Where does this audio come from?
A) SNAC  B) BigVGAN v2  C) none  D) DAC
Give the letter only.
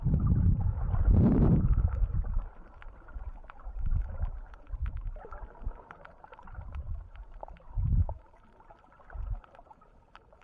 B